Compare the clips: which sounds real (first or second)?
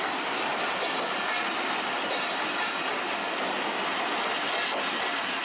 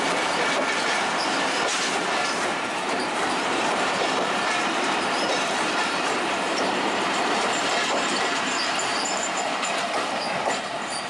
first